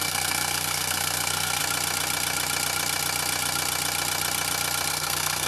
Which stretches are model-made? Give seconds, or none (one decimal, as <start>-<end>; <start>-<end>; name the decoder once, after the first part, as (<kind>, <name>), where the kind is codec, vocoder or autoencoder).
0.0-1.6 (codec, SNAC); 4.9-5.5